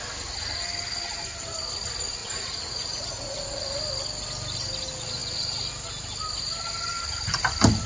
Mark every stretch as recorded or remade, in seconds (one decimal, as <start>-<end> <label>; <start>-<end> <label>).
0.0-2.2 recorded; 2.2-3.6 remade; 3.6-7.9 recorded